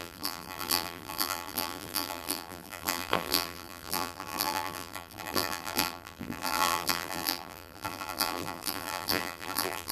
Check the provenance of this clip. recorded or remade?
remade